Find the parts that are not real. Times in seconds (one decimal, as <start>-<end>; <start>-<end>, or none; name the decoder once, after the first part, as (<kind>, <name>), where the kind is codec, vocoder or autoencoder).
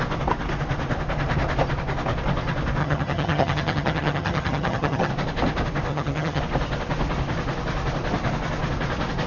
2.8-5.1 (vocoder, HiFi-GAN); 5.9-6.4